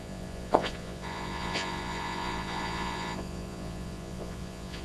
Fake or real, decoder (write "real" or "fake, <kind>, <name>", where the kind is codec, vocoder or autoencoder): fake, vocoder, Vocos